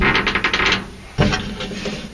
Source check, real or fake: real